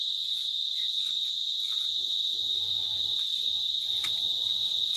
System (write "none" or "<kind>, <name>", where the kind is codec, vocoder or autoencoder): none